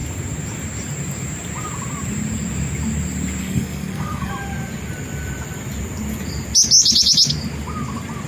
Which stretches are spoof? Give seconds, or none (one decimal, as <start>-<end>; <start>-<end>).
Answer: 3.4-4.3